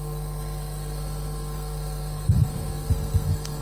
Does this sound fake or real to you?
fake